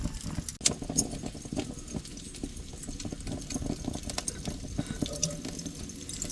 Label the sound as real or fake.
real